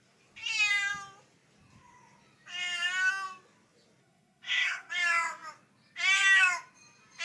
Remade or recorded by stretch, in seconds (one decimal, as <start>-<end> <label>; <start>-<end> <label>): 0.0-4.0 recorded; 4.0-4.9 remade; 4.9-7.2 recorded